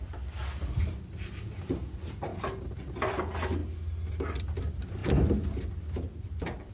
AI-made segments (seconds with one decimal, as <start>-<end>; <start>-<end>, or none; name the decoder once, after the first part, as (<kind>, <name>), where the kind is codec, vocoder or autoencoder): 0.0-2.3 (vocoder, BigVGAN v2); 2.8-3.6; 4.1-6.7